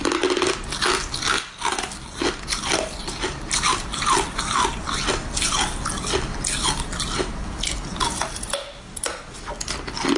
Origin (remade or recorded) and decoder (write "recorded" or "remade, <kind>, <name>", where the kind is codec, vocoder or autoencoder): recorded